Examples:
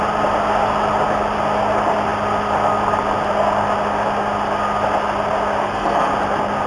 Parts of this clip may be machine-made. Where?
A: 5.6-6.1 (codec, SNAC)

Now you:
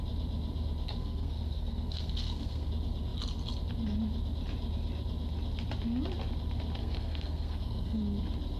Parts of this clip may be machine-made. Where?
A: 1.0-2.7 (codec, SNAC); 6.8-8.0

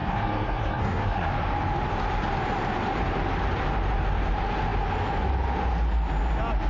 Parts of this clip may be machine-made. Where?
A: 0.0-1.3 (codec, SNAC)

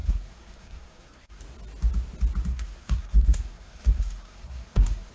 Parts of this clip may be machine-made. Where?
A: 0.0-1.4 (codec, SNAC); 2.5-5.1

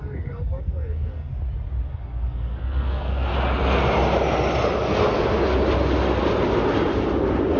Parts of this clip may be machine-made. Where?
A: 0.0-1.3 (codec, SNAC); 1.9-3.3

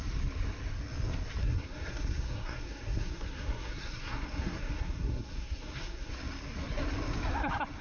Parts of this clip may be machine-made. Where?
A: 1.4-6.1 (codec, SNAC)

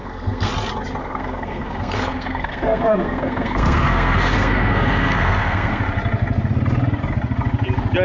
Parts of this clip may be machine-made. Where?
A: 0.0-0.5 (codec, SNAC); 1.0-5.8